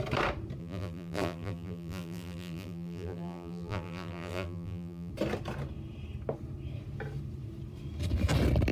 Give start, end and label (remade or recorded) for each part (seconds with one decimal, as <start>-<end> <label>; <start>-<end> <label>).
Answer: 0.0-0.6 recorded; 0.6-5.1 remade; 5.1-8.7 recorded